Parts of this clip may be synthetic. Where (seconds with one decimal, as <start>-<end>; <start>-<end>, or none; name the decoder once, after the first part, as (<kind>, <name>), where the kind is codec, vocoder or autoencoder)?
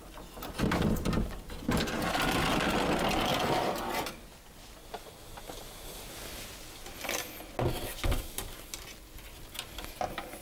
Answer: none